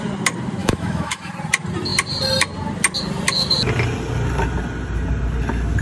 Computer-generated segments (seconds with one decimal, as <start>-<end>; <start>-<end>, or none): 0.6-1.3